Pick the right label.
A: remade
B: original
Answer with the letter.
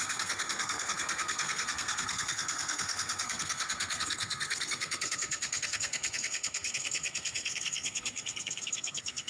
A